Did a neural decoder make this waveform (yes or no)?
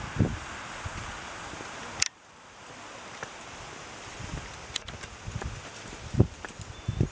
no